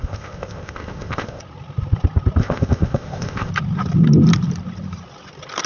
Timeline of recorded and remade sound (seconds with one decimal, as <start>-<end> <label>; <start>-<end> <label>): 0.0-1.4 remade; 1.4-2.4 recorded; 2.4-3.5 remade; 3.5-5.7 recorded